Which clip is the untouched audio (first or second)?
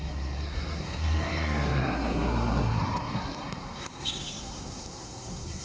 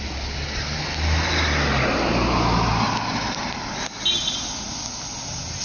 second